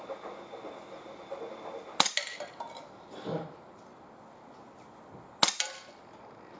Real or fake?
real